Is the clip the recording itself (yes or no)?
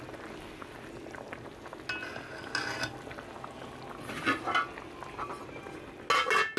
yes